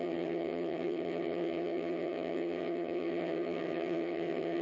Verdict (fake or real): fake